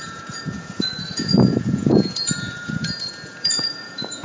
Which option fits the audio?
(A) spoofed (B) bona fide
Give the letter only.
A